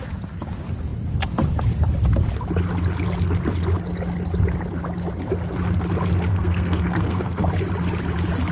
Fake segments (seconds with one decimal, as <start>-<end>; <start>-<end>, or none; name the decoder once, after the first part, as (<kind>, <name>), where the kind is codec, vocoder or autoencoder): 6.3-7.5 (codec, SNAC)